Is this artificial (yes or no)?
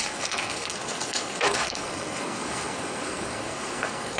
yes